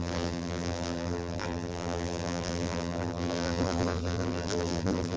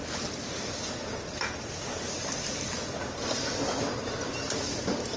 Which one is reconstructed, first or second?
first